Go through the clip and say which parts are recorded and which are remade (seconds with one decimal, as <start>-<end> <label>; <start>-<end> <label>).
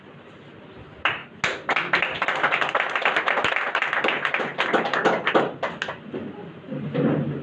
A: 0.0-7.4 recorded